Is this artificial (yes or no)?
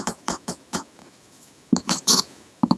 yes